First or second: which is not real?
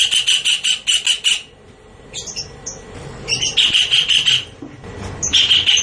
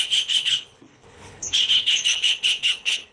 second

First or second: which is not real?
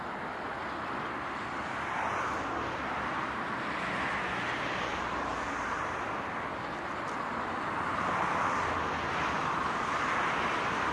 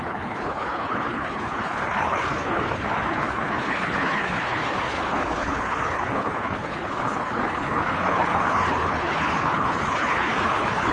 second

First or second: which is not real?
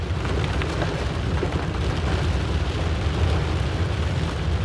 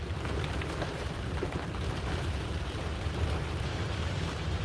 second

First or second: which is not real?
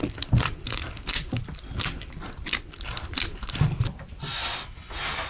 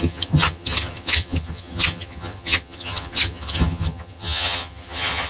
second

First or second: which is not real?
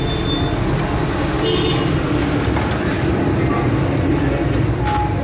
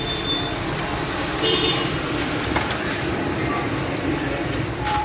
second